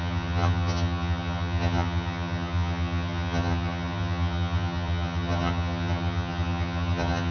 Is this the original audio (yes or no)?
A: no